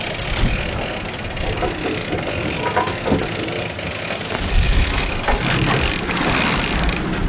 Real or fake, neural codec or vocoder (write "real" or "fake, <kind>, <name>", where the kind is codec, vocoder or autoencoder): real